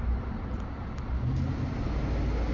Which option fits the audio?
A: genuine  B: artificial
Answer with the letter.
A